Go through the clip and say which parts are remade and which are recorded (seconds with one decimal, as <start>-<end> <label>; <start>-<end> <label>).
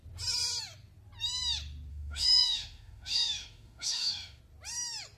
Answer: 0.0-1.9 recorded; 1.9-4.4 remade; 4.4-5.2 recorded